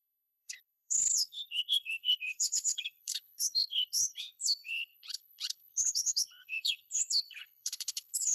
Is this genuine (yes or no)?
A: no